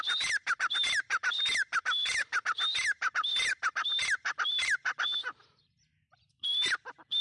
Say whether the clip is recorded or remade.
remade